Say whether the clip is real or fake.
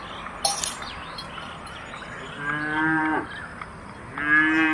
real